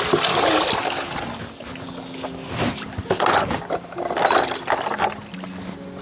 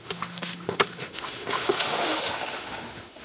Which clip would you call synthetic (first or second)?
second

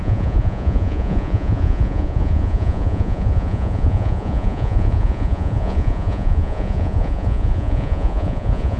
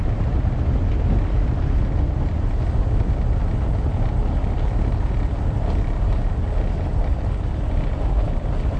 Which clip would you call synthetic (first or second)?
first